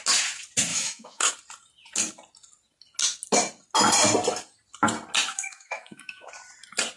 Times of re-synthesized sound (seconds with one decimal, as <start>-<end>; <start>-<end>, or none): 0.7-1.3; 5.3-6.3